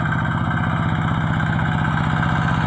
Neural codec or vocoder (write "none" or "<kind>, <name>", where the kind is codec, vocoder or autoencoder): none